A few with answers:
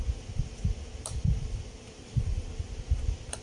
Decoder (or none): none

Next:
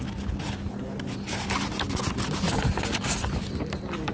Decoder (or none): none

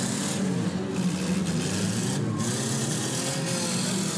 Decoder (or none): none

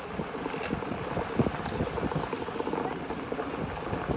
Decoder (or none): none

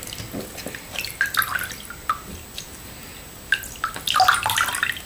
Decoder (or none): none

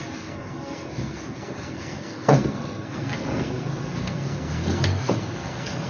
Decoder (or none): codec, SNAC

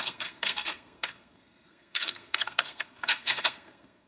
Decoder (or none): codec, SNAC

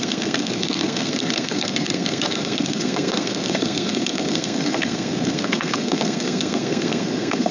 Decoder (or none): codec, SNAC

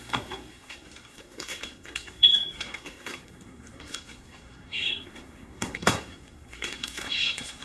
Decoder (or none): codec, SNAC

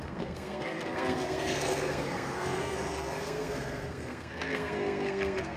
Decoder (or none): codec, SNAC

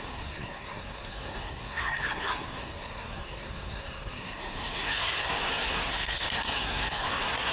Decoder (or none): codec, SNAC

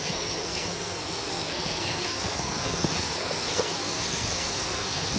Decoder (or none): codec, SNAC